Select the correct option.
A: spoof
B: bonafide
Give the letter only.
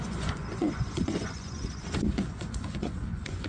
A